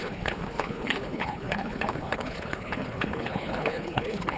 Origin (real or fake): fake